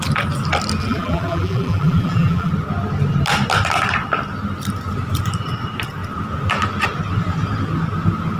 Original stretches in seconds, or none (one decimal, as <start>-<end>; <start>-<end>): 0.0-0.8; 2.5-8.4